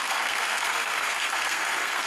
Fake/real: fake